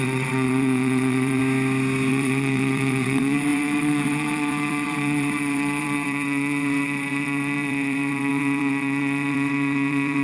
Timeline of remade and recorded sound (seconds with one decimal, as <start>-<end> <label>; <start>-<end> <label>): 0.0-1.4 remade; 1.4-2.1 recorded; 2.1-10.2 remade